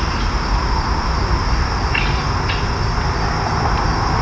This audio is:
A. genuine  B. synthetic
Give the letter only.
A